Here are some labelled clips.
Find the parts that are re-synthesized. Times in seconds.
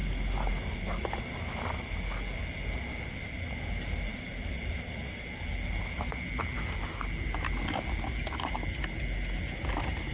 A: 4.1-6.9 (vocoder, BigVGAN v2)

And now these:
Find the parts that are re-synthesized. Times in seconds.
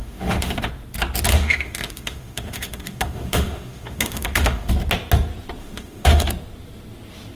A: 0.0-0.7 (autoencoder, DAC-VAE); 1.3-4.7; 5.6-6.3